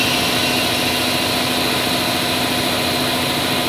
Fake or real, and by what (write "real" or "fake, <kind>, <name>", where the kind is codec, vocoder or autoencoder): real